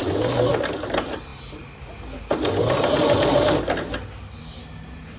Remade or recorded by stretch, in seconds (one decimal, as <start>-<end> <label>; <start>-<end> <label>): 0.0-5.2 recorded